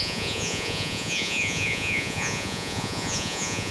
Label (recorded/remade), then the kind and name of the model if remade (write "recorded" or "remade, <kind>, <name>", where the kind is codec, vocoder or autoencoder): remade, vocoder, Vocos